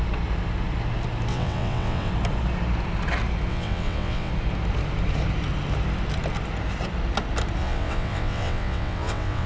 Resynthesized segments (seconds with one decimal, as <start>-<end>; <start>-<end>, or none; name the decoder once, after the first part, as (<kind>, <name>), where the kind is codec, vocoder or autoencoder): 1.3-2.1 (vocoder, WaveNeXt); 3.5-4.3; 7.6-9.5